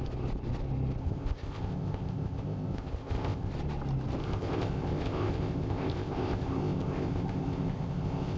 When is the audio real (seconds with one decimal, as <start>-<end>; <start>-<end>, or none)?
0.0-1.0; 3.5-4.2

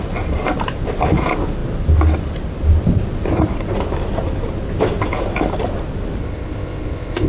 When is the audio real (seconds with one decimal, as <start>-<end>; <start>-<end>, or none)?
0.0-6.2

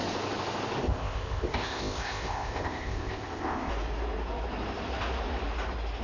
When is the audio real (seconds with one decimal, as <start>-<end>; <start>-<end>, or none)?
0.0-0.8; 3.7-6.0

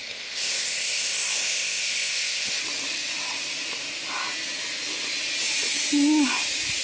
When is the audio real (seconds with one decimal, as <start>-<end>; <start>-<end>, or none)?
2.6-6.8

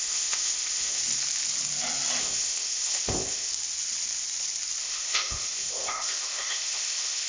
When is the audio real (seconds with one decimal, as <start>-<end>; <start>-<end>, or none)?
1.0-2.2; 3.5-4.8

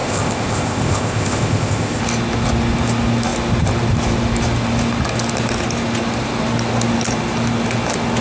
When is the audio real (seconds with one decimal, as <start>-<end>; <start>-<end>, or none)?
2.0-8.2

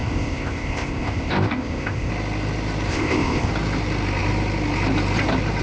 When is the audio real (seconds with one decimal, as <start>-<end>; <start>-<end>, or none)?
2.1-2.9; 3.5-5.6

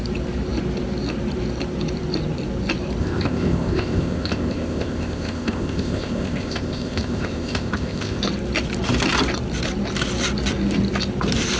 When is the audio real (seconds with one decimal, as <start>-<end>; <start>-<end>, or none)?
0.0-3.0; 8.2-11.6